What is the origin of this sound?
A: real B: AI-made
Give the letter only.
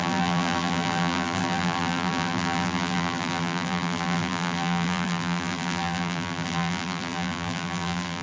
B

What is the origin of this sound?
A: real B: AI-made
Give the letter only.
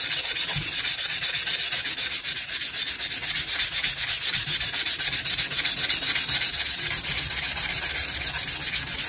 A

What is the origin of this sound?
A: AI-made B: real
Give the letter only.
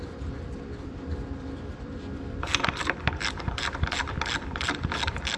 A